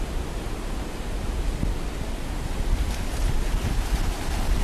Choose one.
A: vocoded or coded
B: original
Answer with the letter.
B